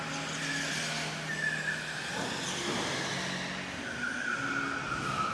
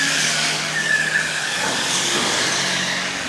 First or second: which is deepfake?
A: second